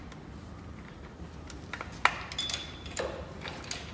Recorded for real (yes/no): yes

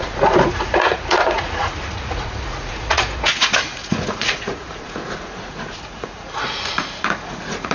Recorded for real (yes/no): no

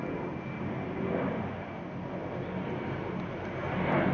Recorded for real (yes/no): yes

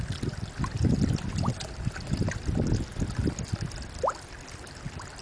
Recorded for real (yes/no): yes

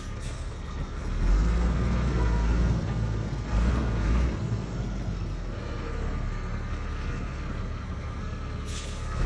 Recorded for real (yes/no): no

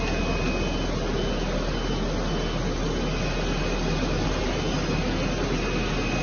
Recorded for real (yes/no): yes